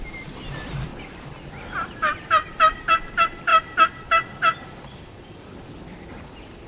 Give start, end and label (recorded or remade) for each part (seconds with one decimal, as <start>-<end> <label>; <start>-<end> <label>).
0.0-0.9 remade; 0.9-1.5 recorded; 1.5-6.7 remade